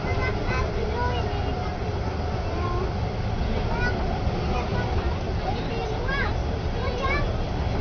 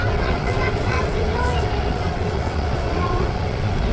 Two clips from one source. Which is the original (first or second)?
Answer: first